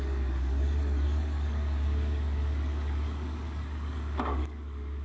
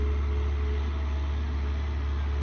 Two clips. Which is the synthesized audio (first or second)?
first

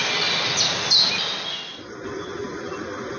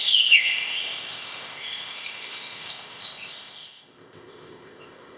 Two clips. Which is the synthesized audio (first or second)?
second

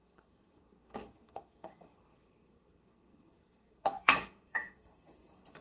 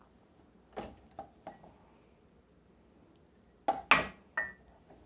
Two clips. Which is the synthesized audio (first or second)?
first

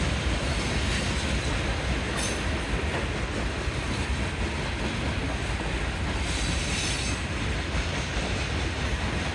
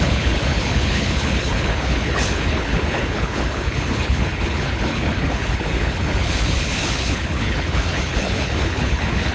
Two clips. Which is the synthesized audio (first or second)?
second